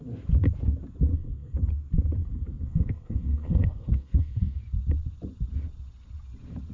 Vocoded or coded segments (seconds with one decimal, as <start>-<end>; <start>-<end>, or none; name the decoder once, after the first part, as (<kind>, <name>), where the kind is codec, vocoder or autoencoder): 1.1-1.7 (codec, SNAC); 2.2-4.6